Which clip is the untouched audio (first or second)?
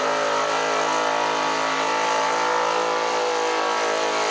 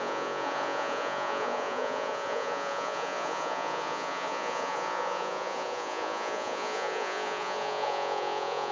first